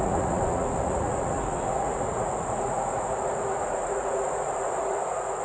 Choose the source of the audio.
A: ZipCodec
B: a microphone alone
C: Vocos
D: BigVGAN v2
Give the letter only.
C